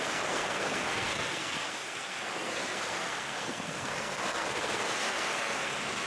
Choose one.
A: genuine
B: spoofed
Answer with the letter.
B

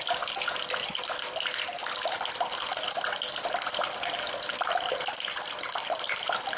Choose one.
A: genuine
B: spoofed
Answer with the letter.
A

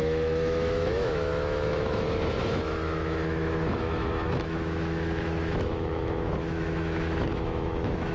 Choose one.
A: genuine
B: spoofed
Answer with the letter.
B